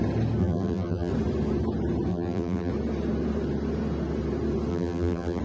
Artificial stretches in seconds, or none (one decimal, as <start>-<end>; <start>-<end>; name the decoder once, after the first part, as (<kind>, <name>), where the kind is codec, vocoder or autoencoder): 0.4-1.1 (vocoder, BigVGAN v2); 2.1-2.7; 4.7-5.4

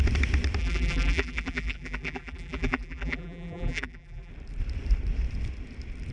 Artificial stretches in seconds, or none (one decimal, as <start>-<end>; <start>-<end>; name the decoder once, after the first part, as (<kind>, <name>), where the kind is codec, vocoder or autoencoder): 0.6-4.3 (vocoder, BigVGAN v2)

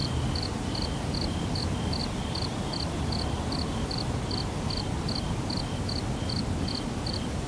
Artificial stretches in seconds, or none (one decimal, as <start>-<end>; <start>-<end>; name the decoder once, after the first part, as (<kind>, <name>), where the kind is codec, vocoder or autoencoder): 0.0-1.6 (vocoder, BigVGAN v2)

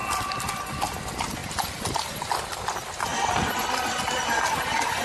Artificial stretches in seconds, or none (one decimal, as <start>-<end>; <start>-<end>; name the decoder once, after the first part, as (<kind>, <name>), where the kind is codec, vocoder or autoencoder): 0.0-0.5 (vocoder, BigVGAN v2); 1.4-2.7

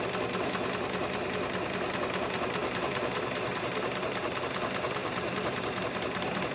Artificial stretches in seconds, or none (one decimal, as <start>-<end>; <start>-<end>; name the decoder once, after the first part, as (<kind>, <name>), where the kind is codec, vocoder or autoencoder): 2.6-4.4 (vocoder, BigVGAN v2); 5.0-5.8

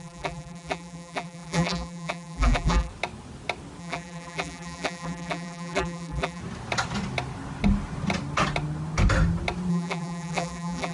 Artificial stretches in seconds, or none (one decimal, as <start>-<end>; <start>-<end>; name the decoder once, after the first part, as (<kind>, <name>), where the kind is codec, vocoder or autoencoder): 0.0-2.9 (vocoder, BigVGAN v2); 3.8-6.4; 9.7-10.9

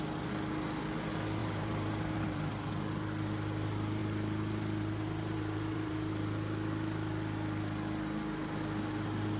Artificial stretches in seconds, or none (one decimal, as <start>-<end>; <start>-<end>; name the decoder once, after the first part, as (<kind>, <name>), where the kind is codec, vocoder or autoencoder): 1.4-2.7 (vocoder, BigVGAN v2); 4.0-6.1

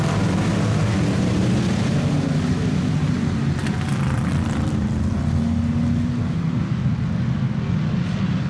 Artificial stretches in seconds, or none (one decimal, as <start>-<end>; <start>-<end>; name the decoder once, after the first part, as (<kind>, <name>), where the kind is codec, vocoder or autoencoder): 3.6-5.2 (vocoder, BigVGAN v2)